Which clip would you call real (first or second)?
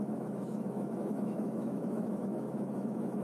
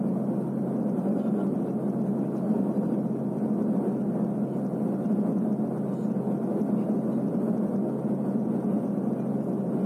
second